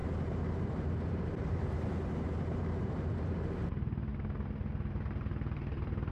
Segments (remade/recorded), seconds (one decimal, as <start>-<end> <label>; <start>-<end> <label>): 0.0-4.1 remade; 4.1-4.7 recorded; 4.7-6.1 remade